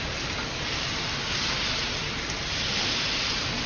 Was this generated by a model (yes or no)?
no